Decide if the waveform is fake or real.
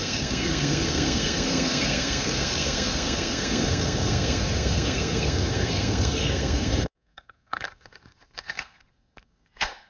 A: fake